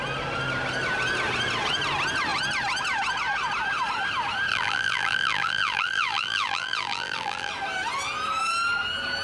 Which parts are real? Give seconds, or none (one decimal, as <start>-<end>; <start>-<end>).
0.0-4.5; 7.5-9.2

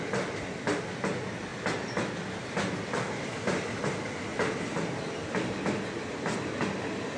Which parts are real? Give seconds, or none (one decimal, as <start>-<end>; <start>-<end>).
0.0-7.2